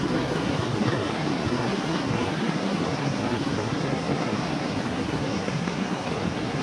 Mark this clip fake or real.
fake